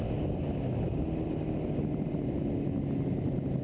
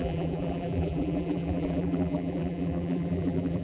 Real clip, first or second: first